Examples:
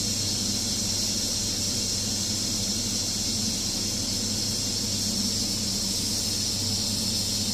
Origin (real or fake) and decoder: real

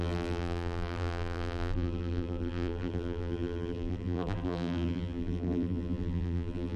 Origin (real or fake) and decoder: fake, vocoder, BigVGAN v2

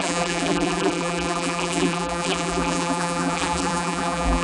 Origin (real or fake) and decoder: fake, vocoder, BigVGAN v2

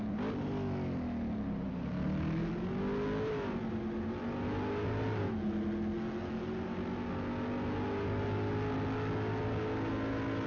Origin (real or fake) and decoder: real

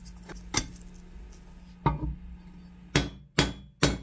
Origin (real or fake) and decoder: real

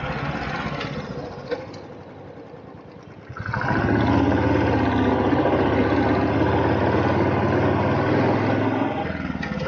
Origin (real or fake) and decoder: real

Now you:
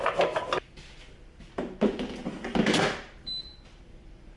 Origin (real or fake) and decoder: fake, vocoder, BigVGAN v2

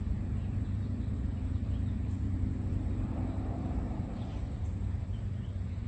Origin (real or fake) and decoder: fake, vocoder, BigVGAN v2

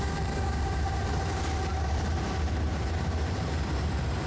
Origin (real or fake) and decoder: fake, vocoder, BigVGAN v2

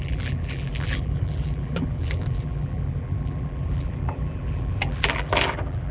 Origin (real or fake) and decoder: fake, vocoder, BigVGAN v2